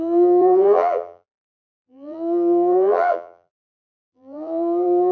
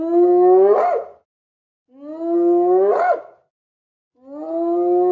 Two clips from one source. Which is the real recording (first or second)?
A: second